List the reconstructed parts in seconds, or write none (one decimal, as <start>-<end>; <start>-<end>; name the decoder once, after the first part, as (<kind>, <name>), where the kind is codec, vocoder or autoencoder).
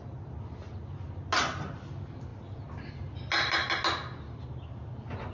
none